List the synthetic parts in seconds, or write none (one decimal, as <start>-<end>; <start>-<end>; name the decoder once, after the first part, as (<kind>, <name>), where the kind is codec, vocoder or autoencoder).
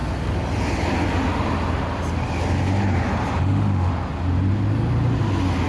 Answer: 3.4-3.9 (autoencoder, DAC-VAE)